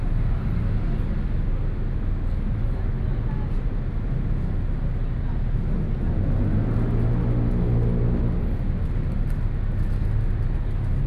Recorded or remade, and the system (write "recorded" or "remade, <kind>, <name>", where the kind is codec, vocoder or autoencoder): recorded